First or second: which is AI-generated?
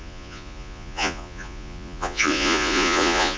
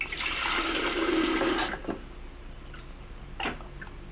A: first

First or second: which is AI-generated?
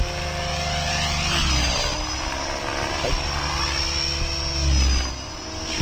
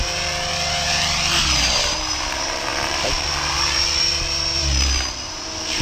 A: second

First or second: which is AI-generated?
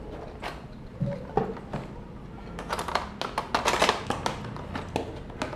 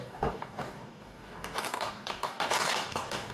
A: second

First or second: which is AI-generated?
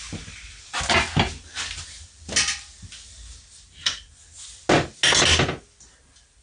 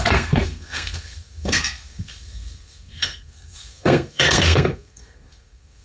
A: second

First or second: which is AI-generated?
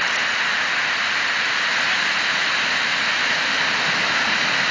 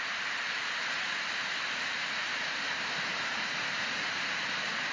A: second